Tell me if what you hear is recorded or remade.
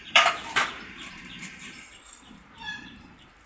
remade